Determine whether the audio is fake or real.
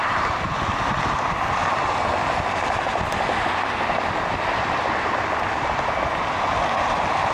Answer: real